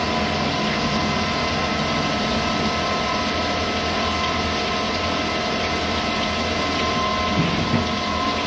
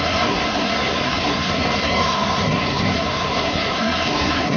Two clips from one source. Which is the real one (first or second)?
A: first